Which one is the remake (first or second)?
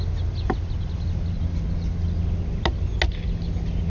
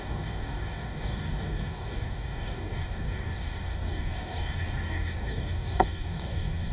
second